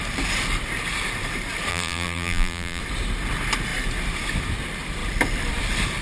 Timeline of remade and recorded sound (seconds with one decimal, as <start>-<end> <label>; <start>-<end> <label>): 0.0-1.7 recorded; 1.7-2.8 remade; 2.8-6.0 recorded